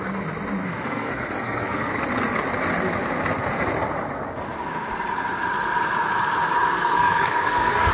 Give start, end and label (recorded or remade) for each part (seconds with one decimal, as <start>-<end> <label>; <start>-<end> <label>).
0.0-0.6 recorded; 0.6-1.9 remade; 1.9-6.8 recorded; 6.8-7.9 remade